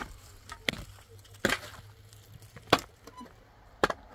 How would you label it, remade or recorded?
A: recorded